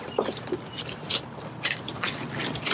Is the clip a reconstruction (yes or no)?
yes